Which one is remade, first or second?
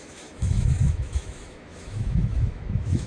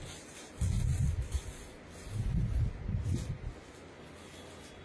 first